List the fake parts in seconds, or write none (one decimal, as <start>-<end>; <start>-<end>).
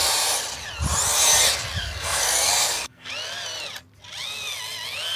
1.8-3.1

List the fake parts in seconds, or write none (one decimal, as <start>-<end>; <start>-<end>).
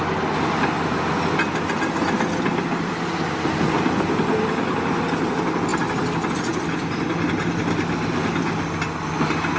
none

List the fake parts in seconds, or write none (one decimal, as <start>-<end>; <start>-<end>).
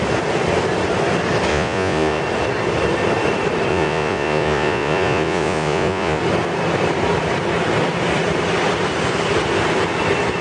1.5-2.2; 3.7-6.2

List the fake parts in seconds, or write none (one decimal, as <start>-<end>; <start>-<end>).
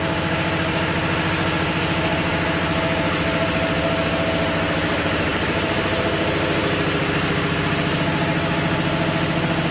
none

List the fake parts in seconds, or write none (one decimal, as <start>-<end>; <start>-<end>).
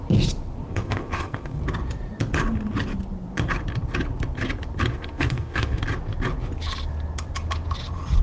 0.7-1.6; 4.9-5.8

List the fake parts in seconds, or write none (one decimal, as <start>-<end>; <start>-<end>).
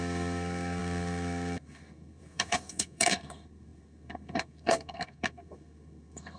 0.0-6.4